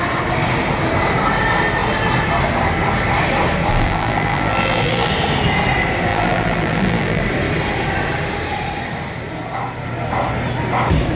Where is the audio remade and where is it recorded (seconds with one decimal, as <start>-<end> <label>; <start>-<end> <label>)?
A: 0.0-3.7 recorded; 3.7-5.1 remade; 5.1-6.1 recorded; 6.1-7.2 remade; 7.2-11.2 recorded